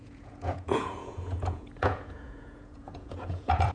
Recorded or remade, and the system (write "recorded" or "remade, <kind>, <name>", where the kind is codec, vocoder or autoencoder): remade, vocoder, Vocos